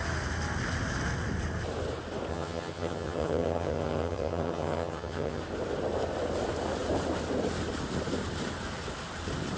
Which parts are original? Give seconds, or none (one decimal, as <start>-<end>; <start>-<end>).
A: 0.0-2.3; 5.4-9.6

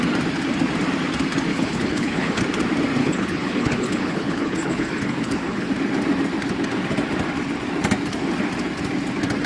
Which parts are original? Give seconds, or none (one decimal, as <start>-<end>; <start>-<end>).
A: 0.0-1.5; 2.4-3.0; 5.7-9.5